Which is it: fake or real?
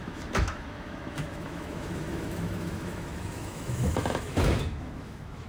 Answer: fake